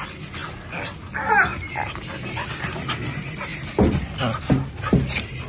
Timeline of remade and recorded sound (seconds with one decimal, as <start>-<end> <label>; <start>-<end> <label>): 0.0-5.5 recorded

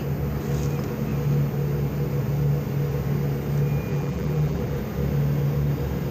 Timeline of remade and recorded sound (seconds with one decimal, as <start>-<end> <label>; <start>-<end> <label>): 0.0-3.9 recorded; 3.9-4.8 remade; 4.8-6.1 recorded

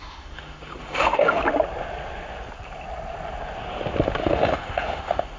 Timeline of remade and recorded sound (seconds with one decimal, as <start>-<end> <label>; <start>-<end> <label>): 0.0-1.4 remade; 1.4-4.2 recorded; 4.2-5.4 remade